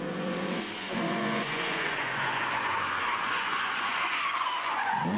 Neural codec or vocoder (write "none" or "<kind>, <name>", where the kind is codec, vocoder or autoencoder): vocoder, Vocos